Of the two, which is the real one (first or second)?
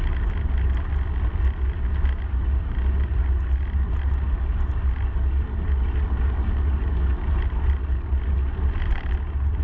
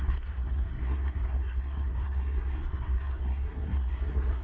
first